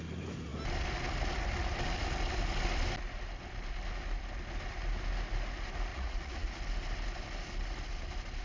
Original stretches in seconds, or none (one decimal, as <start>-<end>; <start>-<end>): 0.0-5.9; 6.5-8.4